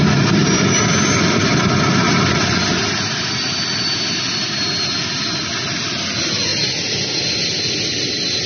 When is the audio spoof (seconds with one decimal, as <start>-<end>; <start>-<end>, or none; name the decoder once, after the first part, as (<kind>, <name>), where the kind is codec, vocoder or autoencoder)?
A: none

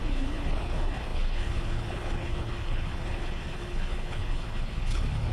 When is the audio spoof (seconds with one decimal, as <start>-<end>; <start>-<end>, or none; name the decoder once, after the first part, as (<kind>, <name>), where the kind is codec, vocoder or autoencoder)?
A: 0.0-5.3 (codec, HILCodec)